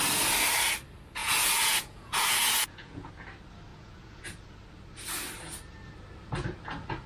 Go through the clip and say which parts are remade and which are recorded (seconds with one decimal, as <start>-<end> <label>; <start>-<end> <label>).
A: 0.0-1.2 recorded; 1.2-3.1 remade; 3.1-3.7 recorded; 3.7-4.2 remade; 4.2-7.1 recorded

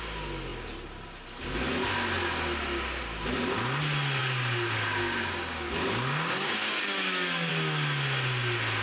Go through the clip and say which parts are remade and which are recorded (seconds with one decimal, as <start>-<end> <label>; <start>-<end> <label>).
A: 0.0-4.2 recorded; 4.2-7.5 remade; 7.5-8.8 recorded

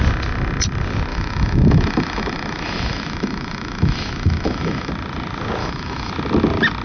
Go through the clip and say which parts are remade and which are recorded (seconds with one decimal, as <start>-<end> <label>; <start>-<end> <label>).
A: 0.0-1.1 recorded; 1.1-4.9 remade; 4.9-5.6 recorded; 5.6-6.1 remade; 6.1-6.8 recorded

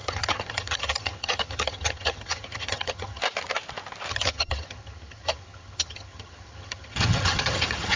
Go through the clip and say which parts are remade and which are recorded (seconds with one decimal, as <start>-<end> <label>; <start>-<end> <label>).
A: 0.0-3.2 remade; 3.2-4.1 recorded; 4.1-8.0 remade

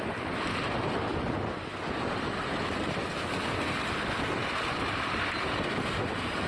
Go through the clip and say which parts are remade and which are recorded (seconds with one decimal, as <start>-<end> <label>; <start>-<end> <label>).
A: 0.0-6.5 recorded

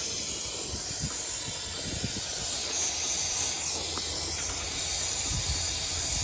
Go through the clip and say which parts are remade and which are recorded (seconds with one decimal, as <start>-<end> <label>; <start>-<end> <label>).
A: 0.0-6.2 recorded

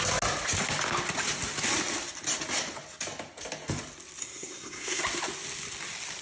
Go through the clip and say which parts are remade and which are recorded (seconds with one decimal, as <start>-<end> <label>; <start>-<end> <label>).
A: 0.0-4.2 recorded; 4.2-5.0 remade; 5.0-6.2 recorded